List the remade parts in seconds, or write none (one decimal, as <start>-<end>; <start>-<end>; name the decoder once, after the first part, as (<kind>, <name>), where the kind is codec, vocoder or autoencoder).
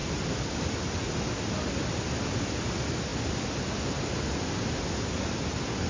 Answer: none